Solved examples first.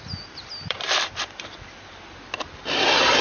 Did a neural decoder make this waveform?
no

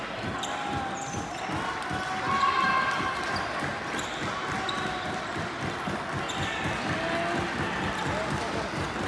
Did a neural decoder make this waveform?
no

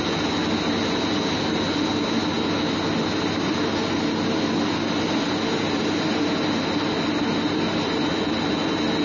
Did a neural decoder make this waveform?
no